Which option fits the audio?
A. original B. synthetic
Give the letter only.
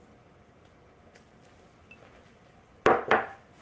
A